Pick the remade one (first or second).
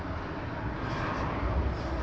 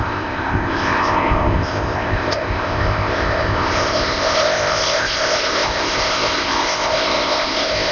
second